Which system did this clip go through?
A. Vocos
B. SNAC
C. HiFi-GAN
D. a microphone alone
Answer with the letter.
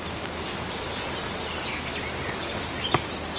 D